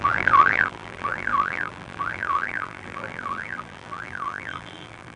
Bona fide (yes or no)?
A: no